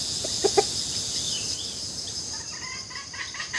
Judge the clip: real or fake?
real